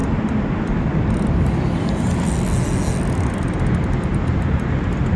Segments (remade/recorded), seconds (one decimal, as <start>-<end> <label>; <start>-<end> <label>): 0.0-5.2 recorded